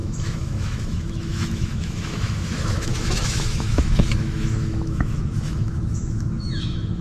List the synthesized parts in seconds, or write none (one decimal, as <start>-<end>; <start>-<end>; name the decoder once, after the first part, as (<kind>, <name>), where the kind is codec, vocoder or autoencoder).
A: 0.0-7.0 (autoencoder, DAC-VAE)